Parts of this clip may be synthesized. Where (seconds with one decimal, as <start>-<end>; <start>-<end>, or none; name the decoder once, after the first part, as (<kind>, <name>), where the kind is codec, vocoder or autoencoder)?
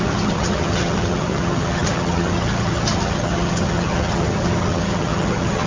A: 0.0-5.7 (vocoder, HiFi-GAN)